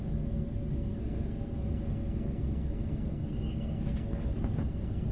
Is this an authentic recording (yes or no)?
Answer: no